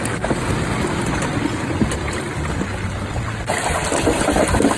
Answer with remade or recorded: remade